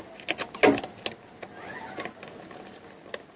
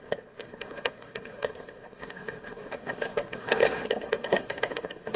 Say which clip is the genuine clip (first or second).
first